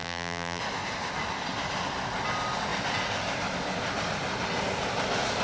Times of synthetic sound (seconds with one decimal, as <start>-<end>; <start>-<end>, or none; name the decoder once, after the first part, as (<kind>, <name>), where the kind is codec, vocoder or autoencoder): 0.0-0.6 (vocoder, BigVGAN v2)